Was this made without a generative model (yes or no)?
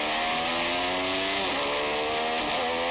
yes